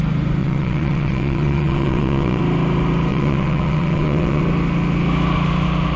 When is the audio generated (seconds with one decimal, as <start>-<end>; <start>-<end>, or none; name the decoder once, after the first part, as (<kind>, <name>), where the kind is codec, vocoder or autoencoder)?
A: 0.4-2.4 (vocoder, WaveNeXt); 3.1-4.4